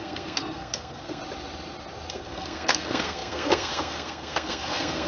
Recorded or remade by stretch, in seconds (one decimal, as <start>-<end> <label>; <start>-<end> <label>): 0.0-1.2 remade; 1.2-2.1 recorded; 2.1-5.1 remade